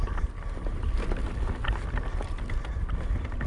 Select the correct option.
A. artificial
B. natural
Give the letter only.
B